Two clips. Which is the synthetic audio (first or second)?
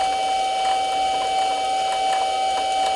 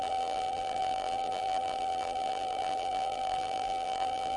second